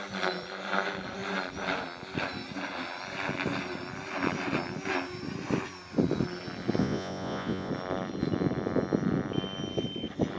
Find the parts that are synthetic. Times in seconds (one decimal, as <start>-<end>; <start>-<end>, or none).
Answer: 6.8-7.7